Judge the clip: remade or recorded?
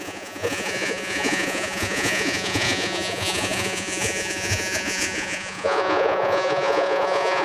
remade